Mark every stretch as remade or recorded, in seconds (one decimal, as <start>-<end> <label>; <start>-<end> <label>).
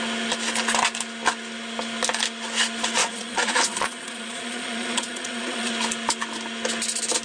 0.0-3.0 recorded; 3.0-5.7 remade; 5.7-7.2 recorded